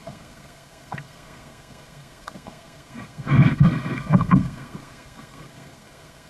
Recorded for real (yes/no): no